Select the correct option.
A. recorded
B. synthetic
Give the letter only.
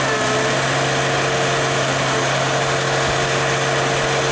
A